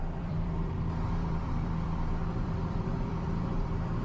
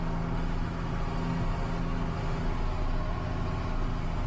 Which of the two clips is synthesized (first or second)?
first